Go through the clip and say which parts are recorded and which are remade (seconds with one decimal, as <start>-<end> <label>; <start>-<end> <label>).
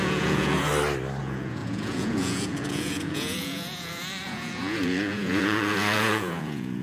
0.0-0.7 remade; 0.7-1.2 recorded; 1.2-6.8 remade